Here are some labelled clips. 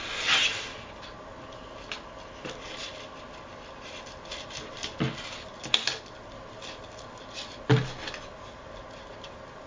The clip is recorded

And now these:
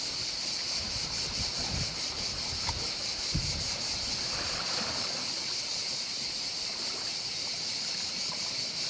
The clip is recorded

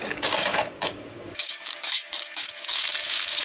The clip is remade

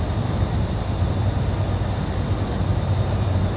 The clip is recorded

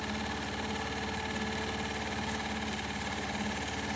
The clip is recorded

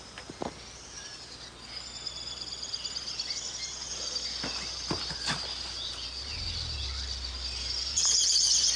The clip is recorded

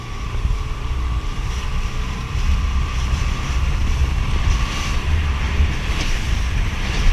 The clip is remade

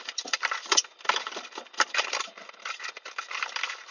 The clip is remade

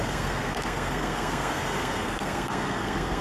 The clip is remade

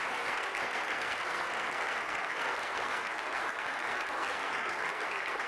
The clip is remade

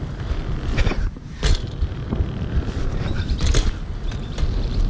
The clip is recorded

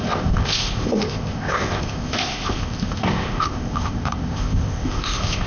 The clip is remade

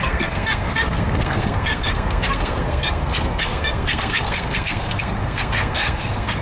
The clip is remade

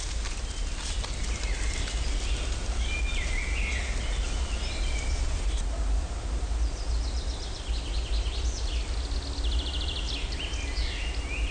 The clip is recorded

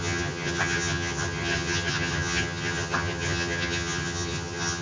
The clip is remade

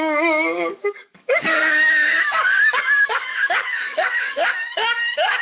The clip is remade